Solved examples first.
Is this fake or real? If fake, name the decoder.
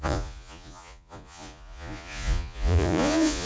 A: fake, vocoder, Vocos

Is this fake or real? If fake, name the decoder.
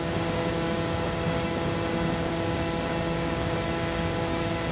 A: fake, codec, DAC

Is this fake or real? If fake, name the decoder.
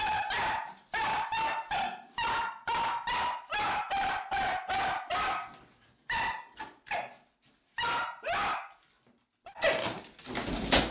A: real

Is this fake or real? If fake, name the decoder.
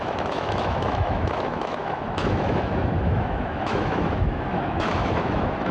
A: fake, autoencoder, DAC-VAE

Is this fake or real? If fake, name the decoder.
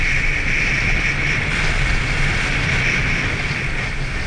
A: real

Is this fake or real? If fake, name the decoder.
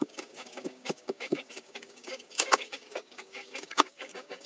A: fake, codec, DAC